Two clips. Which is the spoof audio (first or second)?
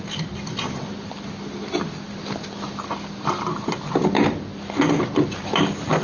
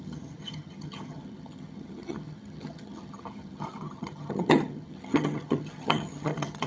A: second